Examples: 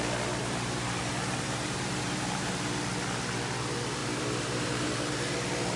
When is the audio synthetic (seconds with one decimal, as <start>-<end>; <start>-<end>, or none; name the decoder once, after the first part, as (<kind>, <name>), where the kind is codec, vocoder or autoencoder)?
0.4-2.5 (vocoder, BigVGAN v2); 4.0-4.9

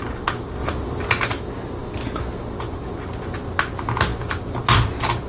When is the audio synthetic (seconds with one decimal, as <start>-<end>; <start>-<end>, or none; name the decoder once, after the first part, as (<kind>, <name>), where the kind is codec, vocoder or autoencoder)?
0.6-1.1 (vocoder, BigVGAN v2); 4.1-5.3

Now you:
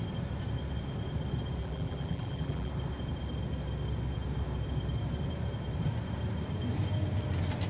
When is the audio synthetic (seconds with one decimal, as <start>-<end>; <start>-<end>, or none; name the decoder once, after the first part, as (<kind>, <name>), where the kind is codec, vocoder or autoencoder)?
1.6-2.7 (vocoder, BigVGAN v2)

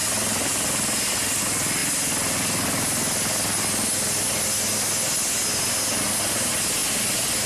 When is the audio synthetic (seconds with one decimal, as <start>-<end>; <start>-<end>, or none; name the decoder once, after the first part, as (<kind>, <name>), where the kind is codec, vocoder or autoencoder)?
0.0-1.4 (vocoder, BigVGAN v2)

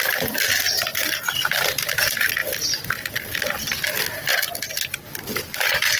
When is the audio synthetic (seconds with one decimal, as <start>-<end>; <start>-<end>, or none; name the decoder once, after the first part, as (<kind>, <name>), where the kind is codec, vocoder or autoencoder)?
0.0-0.9 (vocoder, BigVGAN v2); 2.0-2.4; 3.2-4.3; 4.9-6.0

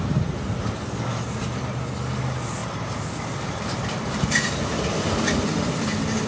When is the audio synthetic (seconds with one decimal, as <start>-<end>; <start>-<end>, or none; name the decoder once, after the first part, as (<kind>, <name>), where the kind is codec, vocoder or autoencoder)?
none

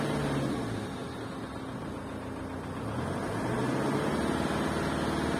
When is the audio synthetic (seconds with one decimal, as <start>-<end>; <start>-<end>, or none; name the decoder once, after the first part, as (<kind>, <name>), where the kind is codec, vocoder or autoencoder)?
none

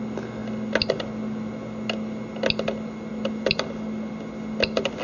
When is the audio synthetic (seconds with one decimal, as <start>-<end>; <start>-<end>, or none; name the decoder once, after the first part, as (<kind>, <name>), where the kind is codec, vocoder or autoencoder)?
none